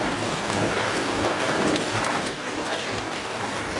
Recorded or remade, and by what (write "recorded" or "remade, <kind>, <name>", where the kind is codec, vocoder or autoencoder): remade, codec, DAC